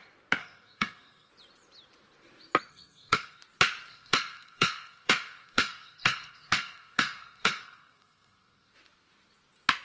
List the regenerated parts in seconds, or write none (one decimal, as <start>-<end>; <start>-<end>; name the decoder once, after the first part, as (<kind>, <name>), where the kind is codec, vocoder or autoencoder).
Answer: 0.4-1.3 (codec, SNAC); 2.7-3.4; 3.9-8.7